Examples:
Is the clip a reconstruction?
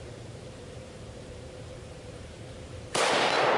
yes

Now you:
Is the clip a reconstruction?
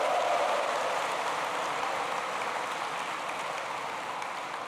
no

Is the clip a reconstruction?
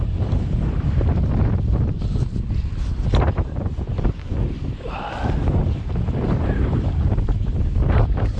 yes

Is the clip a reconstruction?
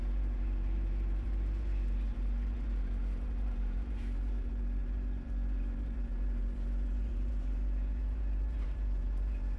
yes